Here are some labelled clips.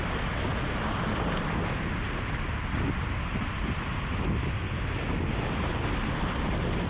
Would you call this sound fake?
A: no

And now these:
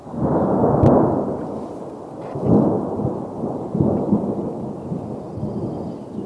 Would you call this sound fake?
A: no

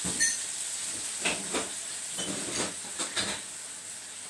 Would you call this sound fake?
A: no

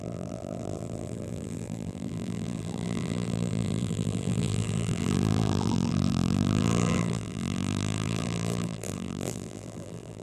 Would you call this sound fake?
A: yes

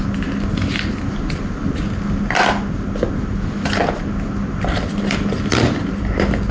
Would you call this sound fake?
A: no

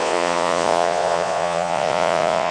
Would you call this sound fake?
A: yes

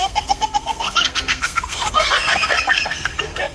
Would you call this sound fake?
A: yes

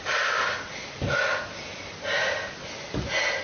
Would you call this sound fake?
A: no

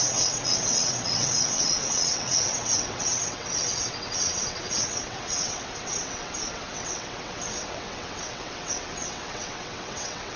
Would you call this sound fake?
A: yes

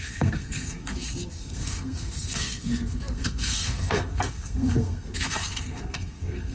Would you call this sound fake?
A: yes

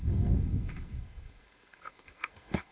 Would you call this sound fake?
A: yes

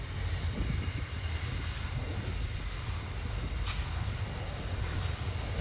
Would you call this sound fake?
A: no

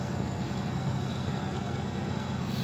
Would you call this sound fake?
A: yes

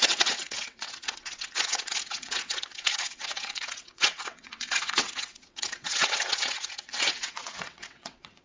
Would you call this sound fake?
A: yes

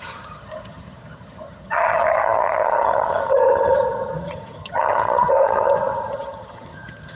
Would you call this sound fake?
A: yes